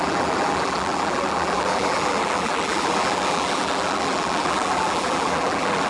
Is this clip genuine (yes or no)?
no